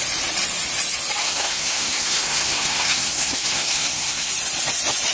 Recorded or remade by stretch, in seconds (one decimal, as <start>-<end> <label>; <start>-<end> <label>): 0.0-1.2 recorded; 1.2-4.3 remade; 4.3-5.1 recorded